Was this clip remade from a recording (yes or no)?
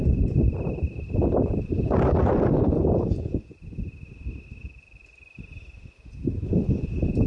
no